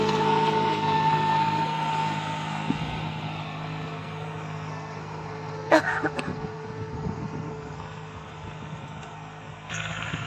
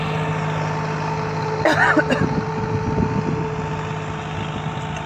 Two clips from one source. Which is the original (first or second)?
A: second